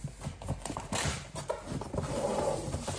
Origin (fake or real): fake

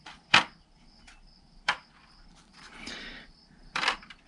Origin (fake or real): fake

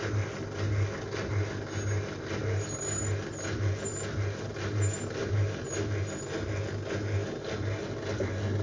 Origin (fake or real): real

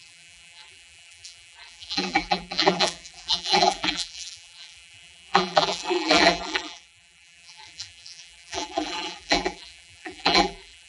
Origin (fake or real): fake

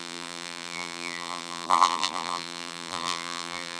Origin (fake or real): fake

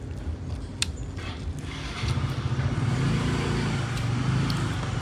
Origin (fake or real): real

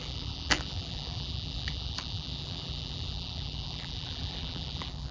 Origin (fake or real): fake